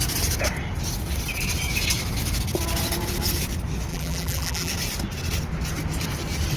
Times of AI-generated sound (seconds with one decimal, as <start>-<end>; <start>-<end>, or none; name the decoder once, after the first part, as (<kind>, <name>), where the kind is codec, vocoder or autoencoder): 3.9-4.7 (vocoder, BigVGAN v2)